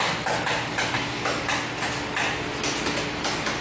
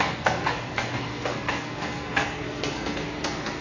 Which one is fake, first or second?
second